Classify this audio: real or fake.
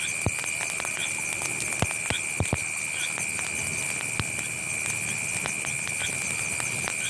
real